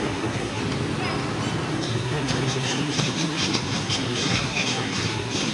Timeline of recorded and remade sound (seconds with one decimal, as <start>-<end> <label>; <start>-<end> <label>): 0.0-0.6 remade; 0.6-1.7 recorded; 1.7-5.5 remade

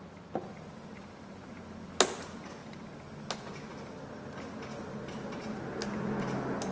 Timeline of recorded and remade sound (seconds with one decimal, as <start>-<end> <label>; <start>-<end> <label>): 0.0-6.7 recorded

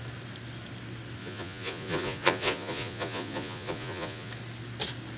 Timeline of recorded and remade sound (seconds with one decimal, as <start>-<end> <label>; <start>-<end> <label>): 0.0-1.2 recorded; 1.2-4.3 remade; 4.3-5.2 recorded

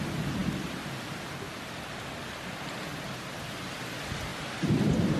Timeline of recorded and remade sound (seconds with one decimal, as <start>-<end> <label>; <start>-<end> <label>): 0.0-2.9 recorded; 2.9-3.5 remade; 3.5-4.3 recorded; 4.3-5.2 remade